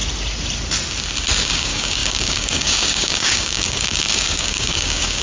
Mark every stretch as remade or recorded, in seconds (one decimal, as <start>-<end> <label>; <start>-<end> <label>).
0.0-1.4 recorded; 1.4-5.2 remade